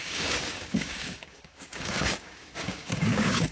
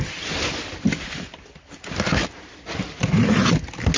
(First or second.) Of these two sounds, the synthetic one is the first